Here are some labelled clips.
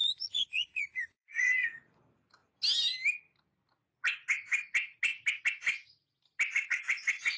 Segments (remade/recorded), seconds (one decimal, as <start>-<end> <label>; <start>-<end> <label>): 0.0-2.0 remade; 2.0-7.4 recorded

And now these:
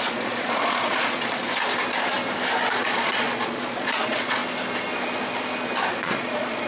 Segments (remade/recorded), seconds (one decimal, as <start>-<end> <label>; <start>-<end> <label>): 0.0-1.5 remade; 1.5-2.7 recorded; 2.7-4.4 remade; 4.4-5.9 recorded; 5.9-6.7 remade

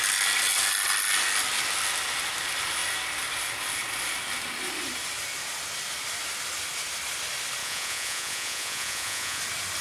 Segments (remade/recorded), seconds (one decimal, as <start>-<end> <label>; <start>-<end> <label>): 0.0-7.6 recorded; 7.6-9.4 remade; 9.4-9.8 recorded

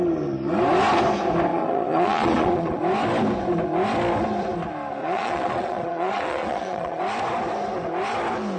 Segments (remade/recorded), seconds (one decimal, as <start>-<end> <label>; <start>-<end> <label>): 0.0-1.5 recorded; 1.5-2.8 remade; 2.8-5.0 recorded; 5.0-7.0 remade; 7.0-8.6 recorded

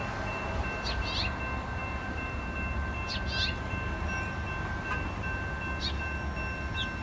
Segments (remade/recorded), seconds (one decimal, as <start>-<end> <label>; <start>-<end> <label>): 0.0-7.0 recorded